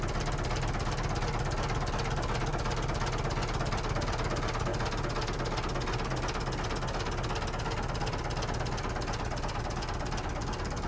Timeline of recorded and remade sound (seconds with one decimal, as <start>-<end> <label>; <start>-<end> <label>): 0.0-10.9 recorded